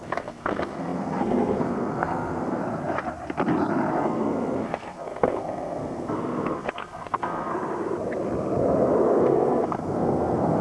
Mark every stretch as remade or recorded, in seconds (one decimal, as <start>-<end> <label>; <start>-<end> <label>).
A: 0.0-2.6 remade; 2.6-3.9 recorded; 3.9-7.5 remade; 7.5-9.2 recorded; 9.2-10.6 remade